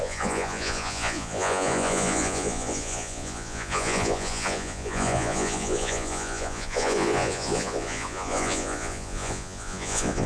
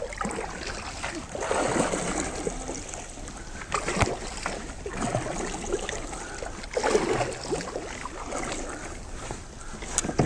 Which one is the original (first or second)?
second